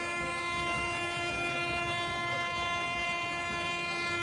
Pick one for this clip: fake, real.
real